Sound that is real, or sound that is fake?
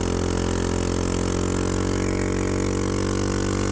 real